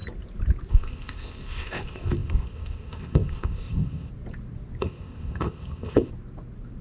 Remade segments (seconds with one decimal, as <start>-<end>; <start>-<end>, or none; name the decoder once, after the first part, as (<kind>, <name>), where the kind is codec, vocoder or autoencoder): 0.7-4.1 (codec, ZipCodec); 4.8-6.1

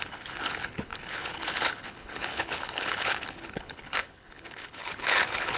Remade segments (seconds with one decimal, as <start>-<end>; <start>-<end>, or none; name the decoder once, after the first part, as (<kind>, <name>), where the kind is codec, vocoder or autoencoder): 0.0-5.6 (codec, HILCodec)

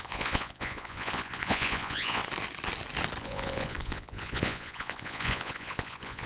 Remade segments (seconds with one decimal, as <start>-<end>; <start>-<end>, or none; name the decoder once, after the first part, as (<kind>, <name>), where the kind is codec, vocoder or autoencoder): 0.0-2.2 (vocoder, Vocos); 3.2-6.3